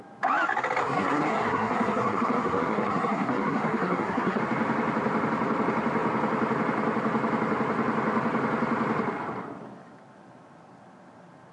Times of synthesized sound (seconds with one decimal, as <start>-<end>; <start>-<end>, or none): 0.8-4.4